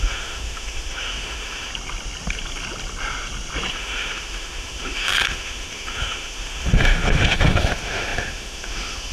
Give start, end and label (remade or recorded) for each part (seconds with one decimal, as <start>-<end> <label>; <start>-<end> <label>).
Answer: 0.0-1.7 remade; 1.7-3.7 recorded; 3.7-9.1 remade